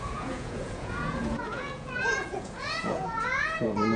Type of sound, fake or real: fake